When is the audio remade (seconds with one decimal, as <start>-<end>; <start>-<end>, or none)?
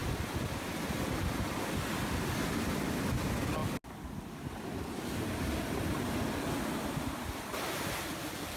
none